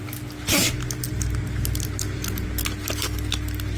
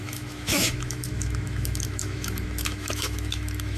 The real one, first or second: first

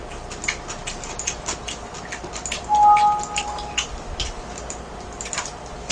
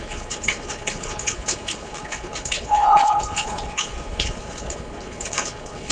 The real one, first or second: first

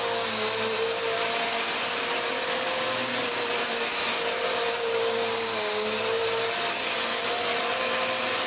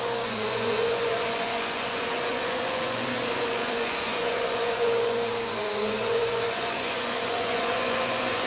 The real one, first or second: first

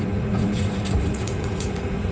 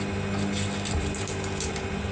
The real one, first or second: second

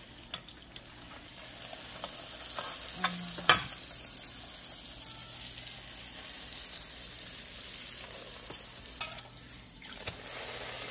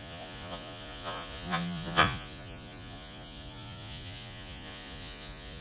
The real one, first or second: first